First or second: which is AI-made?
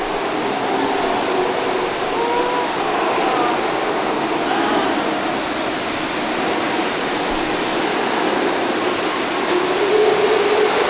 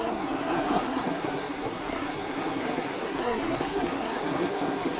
second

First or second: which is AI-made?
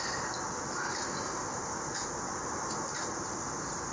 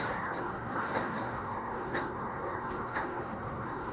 second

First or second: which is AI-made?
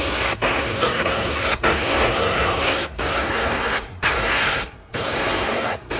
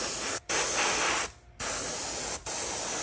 first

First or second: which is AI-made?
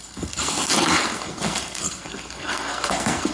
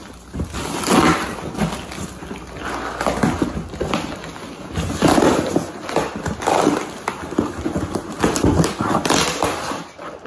first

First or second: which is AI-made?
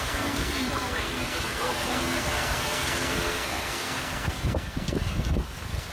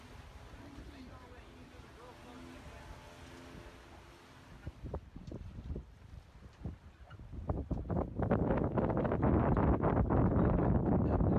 first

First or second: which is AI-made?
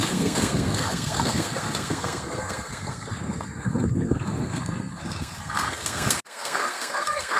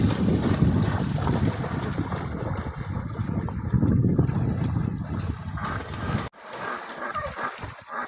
first